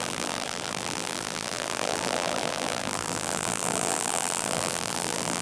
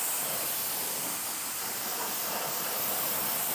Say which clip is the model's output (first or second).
first